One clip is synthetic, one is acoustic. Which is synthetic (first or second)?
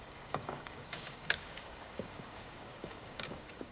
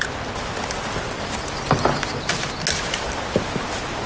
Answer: first